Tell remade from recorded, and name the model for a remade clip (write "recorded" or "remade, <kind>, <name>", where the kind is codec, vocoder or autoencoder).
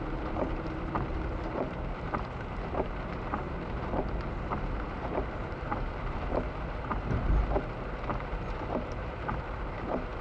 remade, vocoder, BigVGAN v2